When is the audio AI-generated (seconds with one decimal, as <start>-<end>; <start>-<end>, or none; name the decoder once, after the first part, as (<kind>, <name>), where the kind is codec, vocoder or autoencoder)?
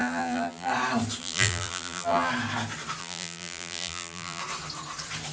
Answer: 0.0-0.7 (vocoder, BigVGAN v2); 1.2-2.3; 3.0-4.4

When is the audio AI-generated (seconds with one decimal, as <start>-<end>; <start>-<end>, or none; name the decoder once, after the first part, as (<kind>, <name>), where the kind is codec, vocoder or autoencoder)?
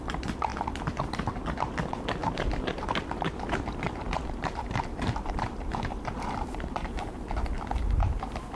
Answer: 0.5-1.4 (vocoder, BigVGAN v2); 2.2-7.2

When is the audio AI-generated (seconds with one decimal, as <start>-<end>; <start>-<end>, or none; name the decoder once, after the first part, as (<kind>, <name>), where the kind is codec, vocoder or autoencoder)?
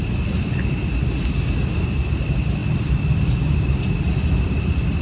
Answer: 2.6-3.5 (vocoder, BigVGAN v2)